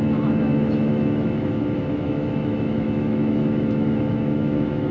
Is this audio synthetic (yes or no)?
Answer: yes